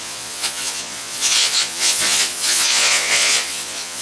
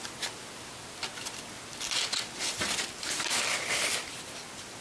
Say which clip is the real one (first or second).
second